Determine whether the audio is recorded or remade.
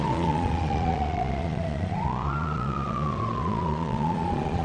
remade